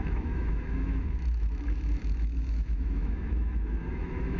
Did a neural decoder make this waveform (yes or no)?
yes